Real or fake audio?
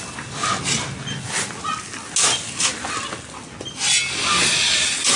real